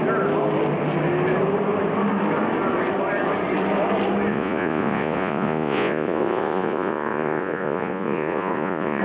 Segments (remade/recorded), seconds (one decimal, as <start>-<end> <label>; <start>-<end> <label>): 0.0-4.3 recorded; 4.3-9.0 remade